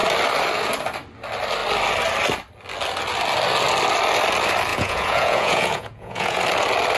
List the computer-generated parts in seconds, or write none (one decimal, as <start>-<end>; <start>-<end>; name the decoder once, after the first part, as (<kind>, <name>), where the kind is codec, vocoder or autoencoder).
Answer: 4.7-6.4 (vocoder, Vocos)